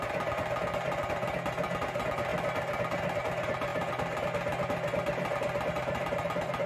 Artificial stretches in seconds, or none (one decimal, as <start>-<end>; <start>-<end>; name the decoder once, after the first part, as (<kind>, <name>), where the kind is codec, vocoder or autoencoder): none